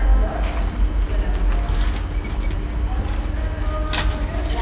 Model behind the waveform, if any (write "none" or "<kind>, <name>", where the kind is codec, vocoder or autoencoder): none